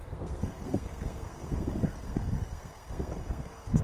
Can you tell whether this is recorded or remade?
remade